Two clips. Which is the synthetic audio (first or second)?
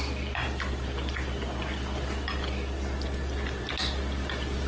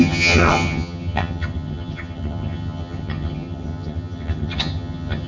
second